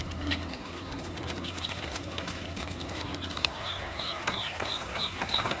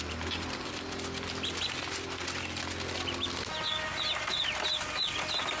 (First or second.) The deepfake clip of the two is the first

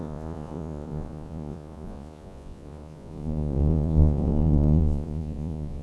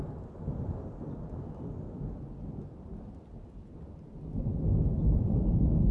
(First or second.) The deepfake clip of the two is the first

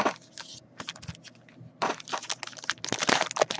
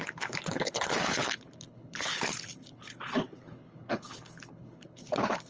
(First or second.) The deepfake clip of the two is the second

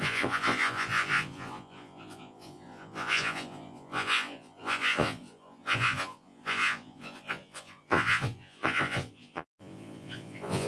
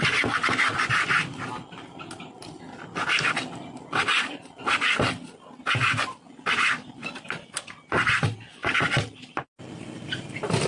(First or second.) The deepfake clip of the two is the first